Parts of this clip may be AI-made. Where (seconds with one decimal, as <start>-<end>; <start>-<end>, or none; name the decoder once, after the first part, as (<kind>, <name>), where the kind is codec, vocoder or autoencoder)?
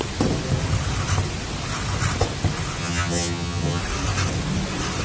2.8-3.8 (vocoder, HiFi-GAN)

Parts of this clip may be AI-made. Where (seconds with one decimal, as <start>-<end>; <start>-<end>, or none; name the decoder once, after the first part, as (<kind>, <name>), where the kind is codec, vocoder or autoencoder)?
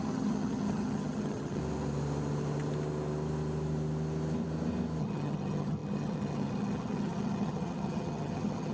0.0-1.6 (vocoder, HiFi-GAN); 5.0-8.7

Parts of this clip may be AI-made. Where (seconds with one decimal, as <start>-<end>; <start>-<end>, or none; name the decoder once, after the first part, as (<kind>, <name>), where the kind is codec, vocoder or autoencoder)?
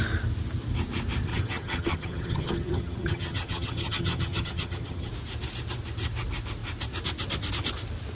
1.3-5.1 (vocoder, HiFi-GAN)